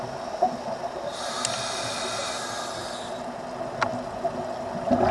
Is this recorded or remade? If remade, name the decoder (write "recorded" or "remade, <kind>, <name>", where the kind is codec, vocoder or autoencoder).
recorded